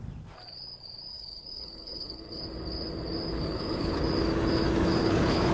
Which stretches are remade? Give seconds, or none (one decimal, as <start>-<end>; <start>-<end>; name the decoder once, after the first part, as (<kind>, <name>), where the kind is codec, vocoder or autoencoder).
1.1-2.4 (codec, HILCodec); 3.3-4.0; 5.0-5.5